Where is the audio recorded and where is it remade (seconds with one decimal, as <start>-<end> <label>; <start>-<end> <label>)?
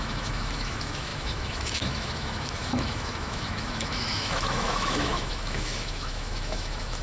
0.0-7.0 remade